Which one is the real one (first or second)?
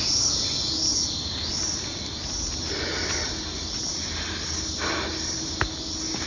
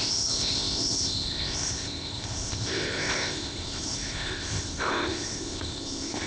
first